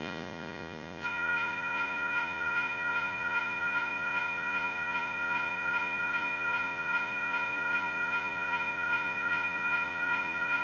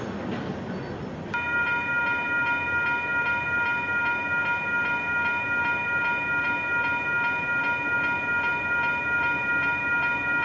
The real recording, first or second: second